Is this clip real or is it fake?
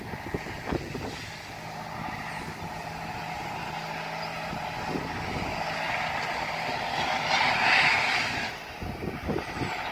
real